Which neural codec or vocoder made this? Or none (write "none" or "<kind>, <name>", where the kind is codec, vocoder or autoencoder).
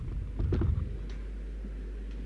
none